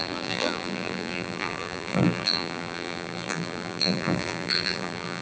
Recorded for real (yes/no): no